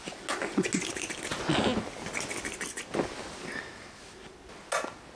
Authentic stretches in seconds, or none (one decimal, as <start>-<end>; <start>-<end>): 0.0-5.2